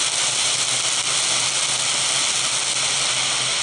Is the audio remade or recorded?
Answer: recorded